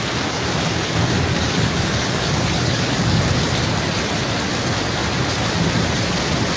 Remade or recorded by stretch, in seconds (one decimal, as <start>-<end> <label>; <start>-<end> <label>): 0.0-1.3 recorded; 1.3-3.2 remade; 3.2-6.6 recorded